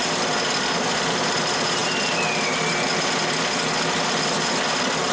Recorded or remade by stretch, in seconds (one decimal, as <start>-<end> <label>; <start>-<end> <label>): 0.0-5.1 recorded